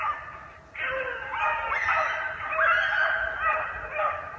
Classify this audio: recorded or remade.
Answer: recorded